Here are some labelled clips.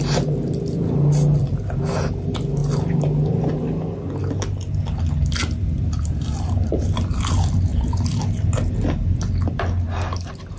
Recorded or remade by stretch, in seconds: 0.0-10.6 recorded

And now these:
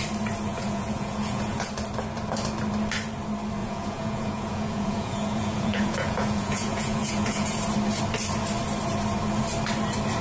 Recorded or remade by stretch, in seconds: 0.0-0.5 recorded; 0.5-1.7 remade; 1.7-3.6 recorded; 3.6-7.6 remade; 7.6-10.2 recorded

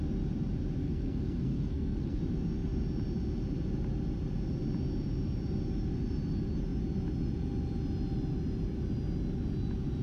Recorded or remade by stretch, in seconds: 0.0-0.8 recorded; 0.8-2.2 remade; 2.2-10.0 recorded